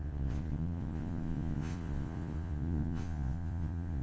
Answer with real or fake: fake